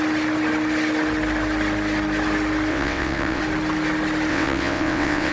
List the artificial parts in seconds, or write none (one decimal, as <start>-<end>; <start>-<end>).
2.7-3.4; 4.3-5.3